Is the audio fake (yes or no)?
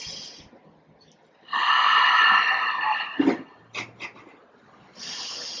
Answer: no